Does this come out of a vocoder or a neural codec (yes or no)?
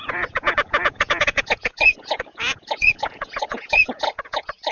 yes